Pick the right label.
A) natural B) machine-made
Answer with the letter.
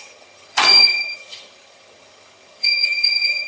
B